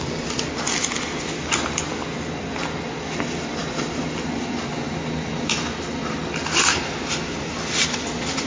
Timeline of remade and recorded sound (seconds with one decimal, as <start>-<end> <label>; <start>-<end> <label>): 0.0-8.5 recorded